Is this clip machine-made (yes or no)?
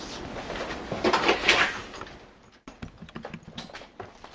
no